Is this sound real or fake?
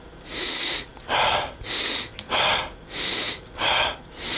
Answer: real